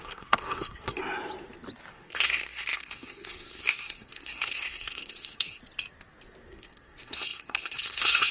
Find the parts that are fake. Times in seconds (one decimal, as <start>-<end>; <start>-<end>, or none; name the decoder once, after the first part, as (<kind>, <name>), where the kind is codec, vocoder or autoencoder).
0.0-1.0 (codec, SNAC); 1.9-5.6; 6.5-8.3